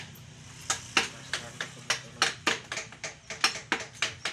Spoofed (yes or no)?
no